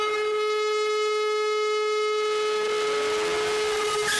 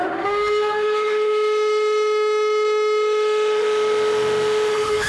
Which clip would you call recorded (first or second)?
first